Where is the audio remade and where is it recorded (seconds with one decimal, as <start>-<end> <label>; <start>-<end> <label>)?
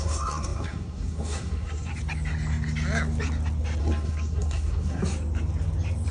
0.0-1.9 remade; 1.9-3.8 recorded; 3.8-5.0 remade; 5.0-6.1 recorded